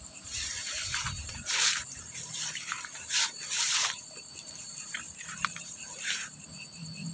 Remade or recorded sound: remade